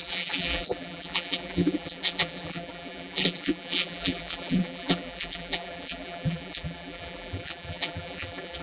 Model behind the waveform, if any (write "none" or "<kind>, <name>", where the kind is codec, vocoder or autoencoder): vocoder, BigVGAN v2